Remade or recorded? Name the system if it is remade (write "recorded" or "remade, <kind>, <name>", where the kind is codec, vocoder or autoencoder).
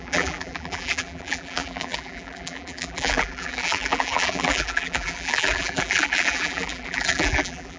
remade, vocoder, BigVGAN v2